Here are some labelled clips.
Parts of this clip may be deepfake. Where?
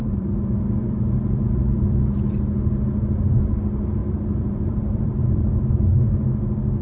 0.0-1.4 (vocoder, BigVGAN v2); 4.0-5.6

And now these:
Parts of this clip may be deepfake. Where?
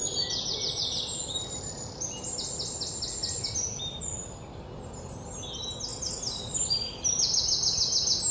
none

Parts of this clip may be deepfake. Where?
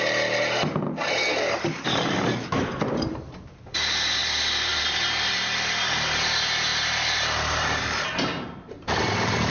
0.0-9.5 (vocoder, BigVGAN v2)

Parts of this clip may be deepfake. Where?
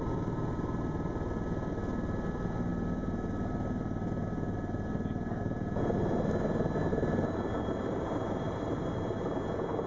6.9-9.4 (vocoder, BigVGAN v2)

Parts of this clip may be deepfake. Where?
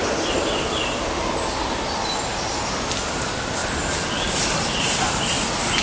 3.6-5.2 (vocoder, BigVGAN v2)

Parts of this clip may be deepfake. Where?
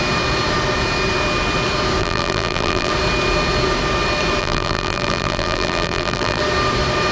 2.0-2.9 (vocoder, BigVGAN v2); 4.4-6.4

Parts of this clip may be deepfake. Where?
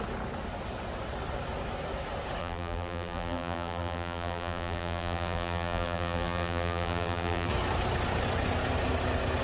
2.4-7.5 (vocoder, BigVGAN v2)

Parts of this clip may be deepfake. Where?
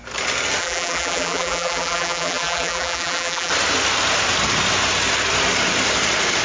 0.6-3.5 (vocoder, BigVGAN v2)